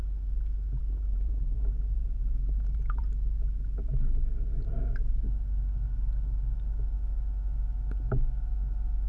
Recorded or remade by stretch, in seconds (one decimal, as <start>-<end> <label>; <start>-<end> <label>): 0.0-0.8 recorded; 0.8-3.0 remade; 3.0-9.1 recorded